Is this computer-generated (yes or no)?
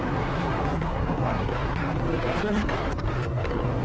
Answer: yes